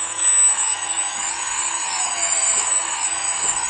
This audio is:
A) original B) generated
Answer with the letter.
B